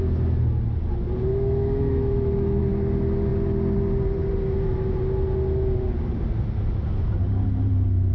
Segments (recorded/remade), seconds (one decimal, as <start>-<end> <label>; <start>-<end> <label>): 0.0-1.3 recorded; 1.3-2.6 remade; 2.6-8.1 recorded